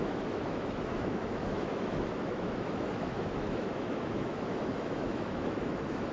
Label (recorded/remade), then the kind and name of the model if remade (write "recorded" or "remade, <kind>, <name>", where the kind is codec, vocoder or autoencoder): remade, autoencoder, DAC-VAE